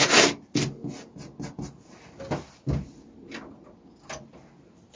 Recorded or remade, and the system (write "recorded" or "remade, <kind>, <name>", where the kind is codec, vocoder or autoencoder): recorded